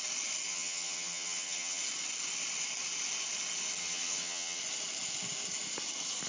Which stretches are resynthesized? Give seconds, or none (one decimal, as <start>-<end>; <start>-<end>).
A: 0.5-1.8; 3.8-4.6